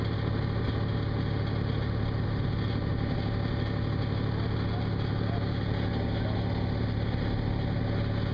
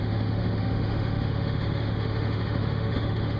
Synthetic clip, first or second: second